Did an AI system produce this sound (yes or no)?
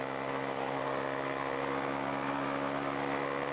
no